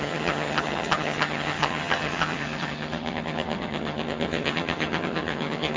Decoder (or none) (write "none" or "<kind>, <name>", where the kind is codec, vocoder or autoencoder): vocoder, HiFi-GAN